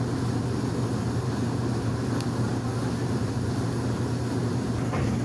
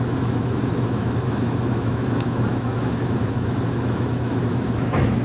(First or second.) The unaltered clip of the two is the first